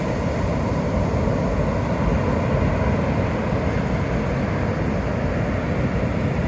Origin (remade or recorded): recorded